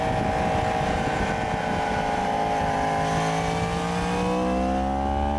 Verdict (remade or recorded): recorded